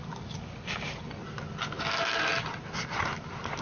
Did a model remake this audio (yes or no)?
no